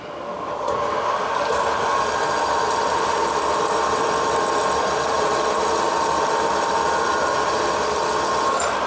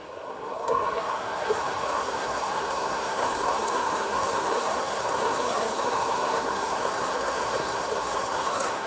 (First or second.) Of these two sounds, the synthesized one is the second